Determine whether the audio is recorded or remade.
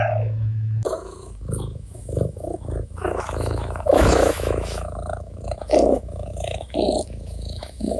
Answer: remade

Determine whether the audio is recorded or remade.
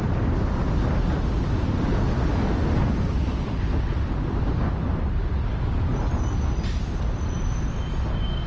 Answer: recorded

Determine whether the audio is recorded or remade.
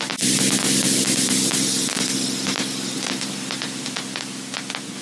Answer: recorded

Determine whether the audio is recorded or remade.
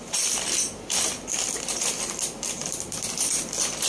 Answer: recorded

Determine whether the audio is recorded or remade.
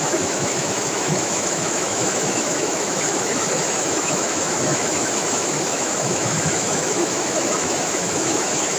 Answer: remade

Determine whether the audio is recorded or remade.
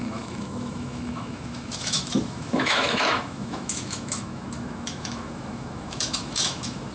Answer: remade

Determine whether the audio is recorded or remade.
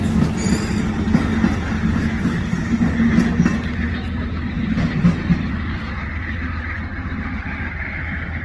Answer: recorded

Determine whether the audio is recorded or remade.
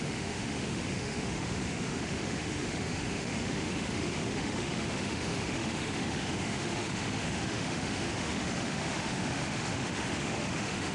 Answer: remade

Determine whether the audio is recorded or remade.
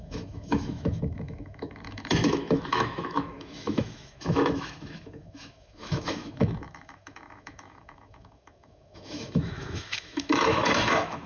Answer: remade